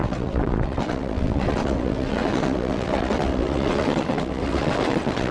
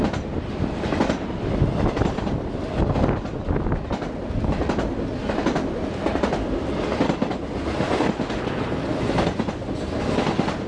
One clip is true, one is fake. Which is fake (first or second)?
first